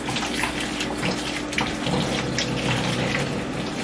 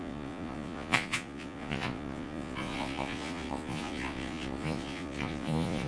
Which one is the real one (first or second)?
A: first